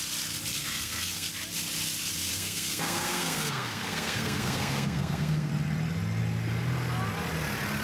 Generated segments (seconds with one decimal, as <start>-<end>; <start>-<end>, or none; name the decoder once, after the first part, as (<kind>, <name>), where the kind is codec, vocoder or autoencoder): 0.6-1.3 (codec, SNAC); 2.3-5.5